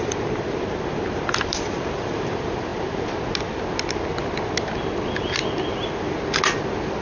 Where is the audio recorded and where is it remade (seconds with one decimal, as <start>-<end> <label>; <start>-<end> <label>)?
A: 0.0-2.7 remade; 2.7-7.0 recorded